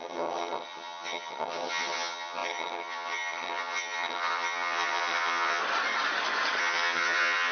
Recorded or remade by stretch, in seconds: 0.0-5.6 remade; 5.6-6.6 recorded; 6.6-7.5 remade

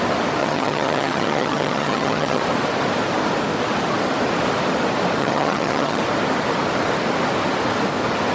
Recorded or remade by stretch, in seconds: 0.0-0.4 recorded; 0.4-2.4 remade; 2.4-5.2 recorded; 5.2-6.0 remade; 6.0-8.3 recorded

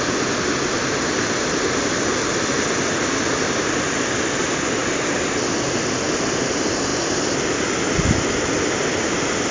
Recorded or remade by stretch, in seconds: 0.0-9.5 recorded